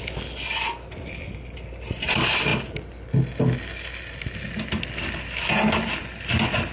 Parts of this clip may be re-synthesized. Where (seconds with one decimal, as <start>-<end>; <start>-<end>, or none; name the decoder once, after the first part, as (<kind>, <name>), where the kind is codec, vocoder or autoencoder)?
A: none